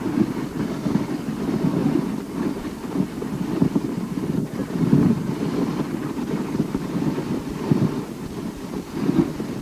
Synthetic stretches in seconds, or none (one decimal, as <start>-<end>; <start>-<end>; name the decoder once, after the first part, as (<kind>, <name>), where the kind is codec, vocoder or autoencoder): 1.8-3.0 (vocoder, BigVGAN v2); 4.6-5.1